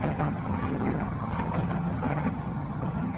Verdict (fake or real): fake